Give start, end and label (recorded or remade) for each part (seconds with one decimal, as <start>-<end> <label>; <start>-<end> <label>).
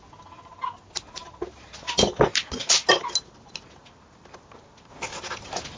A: 0.0-5.8 recorded